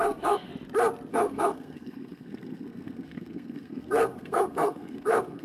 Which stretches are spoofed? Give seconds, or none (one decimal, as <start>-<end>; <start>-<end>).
0.0-0.5; 1.1-5.4

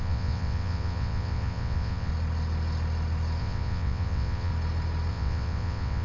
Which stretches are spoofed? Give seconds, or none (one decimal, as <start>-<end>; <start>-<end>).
0.0-2.1; 3.4-4.5; 5.1-6.0

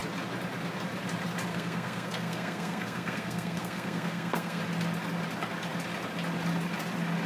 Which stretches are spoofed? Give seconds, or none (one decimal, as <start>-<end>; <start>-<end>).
1.5-4.6

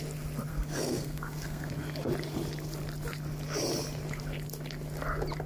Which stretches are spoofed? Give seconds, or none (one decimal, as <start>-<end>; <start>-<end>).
0.5-1.7

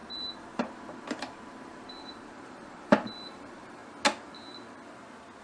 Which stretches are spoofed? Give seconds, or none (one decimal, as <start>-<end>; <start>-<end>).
0.0-3.8

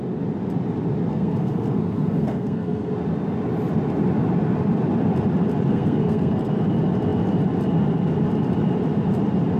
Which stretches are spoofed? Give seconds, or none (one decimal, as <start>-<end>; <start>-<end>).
1.1-2.9; 5.7-6.6

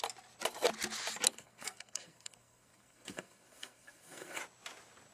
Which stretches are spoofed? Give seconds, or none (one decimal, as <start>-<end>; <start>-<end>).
1.3-4.4

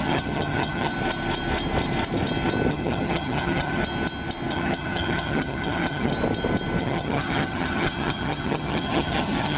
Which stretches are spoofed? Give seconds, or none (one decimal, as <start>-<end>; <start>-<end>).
0.0-0.9; 2.7-3.8; 4.5-6.1; 6.8-9.6